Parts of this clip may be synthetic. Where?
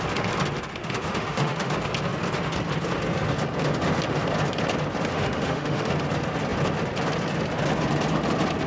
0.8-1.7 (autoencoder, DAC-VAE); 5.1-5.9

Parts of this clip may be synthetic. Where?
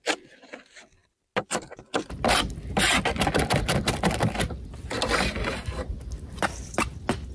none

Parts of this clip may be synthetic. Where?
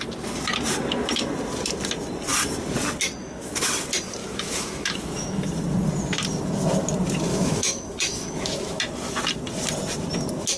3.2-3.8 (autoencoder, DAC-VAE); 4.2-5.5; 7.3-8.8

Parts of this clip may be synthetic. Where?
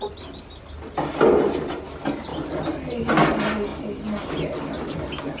none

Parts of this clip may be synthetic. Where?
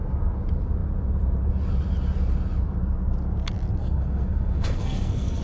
3.8-5.4 (codec, SNAC)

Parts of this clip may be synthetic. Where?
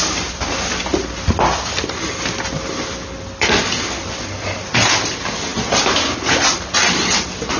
0.0-7.6 (vocoder, BigVGAN v2)